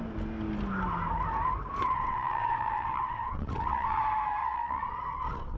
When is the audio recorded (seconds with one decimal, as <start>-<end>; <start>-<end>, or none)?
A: 0.0-1.8; 4.0-4.4